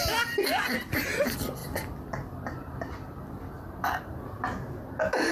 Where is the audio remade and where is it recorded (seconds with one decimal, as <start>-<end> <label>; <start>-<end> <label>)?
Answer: 0.0-1.6 recorded; 1.6-4.4 remade; 4.4-5.3 recorded